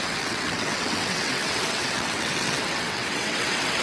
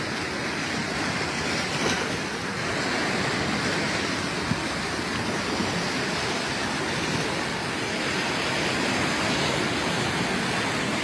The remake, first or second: first